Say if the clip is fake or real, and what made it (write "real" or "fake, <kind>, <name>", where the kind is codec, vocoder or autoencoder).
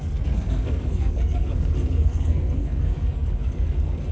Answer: fake, codec, SNAC